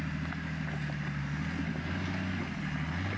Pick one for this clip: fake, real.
real